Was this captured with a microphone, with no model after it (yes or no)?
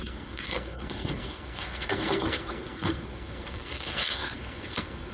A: no